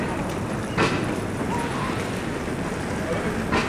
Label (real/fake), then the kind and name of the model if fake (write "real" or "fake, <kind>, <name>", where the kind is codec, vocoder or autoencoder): real